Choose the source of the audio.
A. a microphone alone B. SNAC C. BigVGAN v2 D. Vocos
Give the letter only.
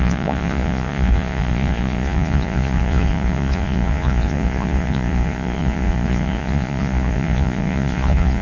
D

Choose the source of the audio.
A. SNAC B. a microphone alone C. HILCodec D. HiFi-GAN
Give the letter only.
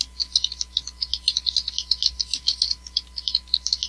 B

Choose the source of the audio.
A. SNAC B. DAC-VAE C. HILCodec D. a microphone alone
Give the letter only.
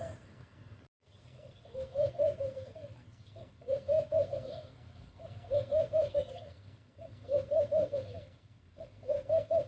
A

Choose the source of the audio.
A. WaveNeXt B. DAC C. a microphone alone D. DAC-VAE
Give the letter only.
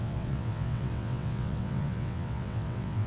A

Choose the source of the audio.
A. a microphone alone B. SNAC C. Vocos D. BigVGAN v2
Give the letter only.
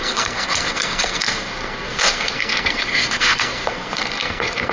B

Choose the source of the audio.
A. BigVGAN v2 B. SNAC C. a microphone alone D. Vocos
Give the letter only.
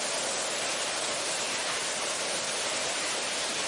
C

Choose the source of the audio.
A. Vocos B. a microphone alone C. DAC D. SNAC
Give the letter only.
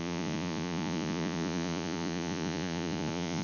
A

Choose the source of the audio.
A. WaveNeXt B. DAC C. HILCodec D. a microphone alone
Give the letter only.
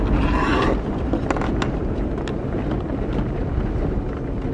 D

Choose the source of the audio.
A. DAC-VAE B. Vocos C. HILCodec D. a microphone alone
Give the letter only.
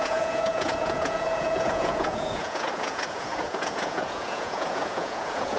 B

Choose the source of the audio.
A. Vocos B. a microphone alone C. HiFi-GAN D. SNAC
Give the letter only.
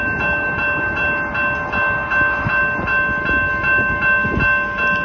B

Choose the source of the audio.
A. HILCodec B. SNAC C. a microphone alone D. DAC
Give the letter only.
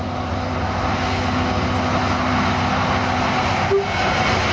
C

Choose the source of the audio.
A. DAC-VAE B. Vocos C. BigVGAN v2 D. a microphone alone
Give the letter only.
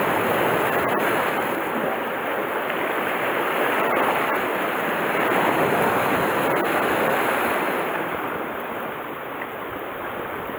D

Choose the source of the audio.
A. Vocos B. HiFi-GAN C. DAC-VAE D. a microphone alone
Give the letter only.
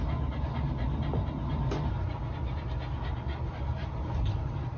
D